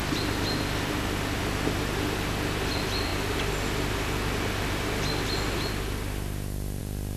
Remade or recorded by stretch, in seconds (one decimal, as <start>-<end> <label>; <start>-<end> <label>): 0.0-7.2 recorded